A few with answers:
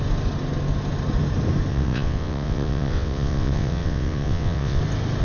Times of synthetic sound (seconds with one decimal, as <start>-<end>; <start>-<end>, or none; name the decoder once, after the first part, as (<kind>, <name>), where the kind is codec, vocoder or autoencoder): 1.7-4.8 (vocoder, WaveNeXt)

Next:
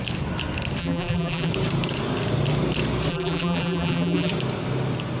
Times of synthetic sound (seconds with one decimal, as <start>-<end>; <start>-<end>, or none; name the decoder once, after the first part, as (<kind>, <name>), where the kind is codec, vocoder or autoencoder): 0.8-1.5 (vocoder, BigVGAN v2); 3.1-4.3

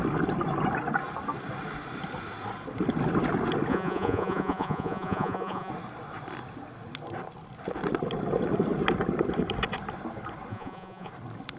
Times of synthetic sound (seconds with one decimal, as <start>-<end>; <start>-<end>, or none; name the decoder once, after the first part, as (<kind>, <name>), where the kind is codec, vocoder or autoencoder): 3.7-5.7 (vocoder, Vocos); 10.5-11.1